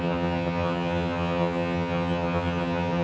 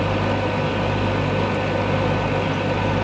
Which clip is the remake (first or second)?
first